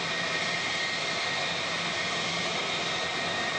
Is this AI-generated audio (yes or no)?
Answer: no